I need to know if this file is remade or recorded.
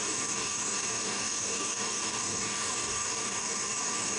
remade